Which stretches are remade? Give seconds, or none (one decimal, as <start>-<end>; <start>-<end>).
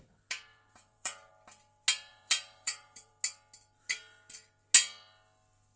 0.5-1.3; 2.1-3.1